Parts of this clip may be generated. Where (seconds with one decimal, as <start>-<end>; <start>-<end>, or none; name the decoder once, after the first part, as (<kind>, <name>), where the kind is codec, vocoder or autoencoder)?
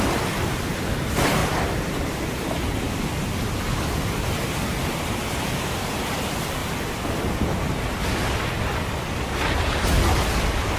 none